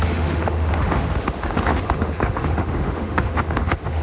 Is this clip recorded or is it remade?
remade